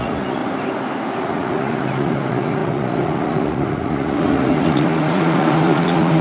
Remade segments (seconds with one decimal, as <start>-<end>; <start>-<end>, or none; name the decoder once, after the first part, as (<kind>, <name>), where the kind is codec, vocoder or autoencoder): 0.0-0.4 (vocoder, Vocos); 1.2-6.2